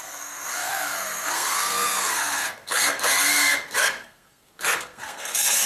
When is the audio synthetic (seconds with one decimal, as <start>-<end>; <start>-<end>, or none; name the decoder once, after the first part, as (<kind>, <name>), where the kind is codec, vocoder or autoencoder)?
0.0-5.7 (codec, SNAC)